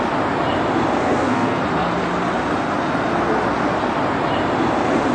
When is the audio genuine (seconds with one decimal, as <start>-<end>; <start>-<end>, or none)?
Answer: 0.0-1.0; 1.6-5.1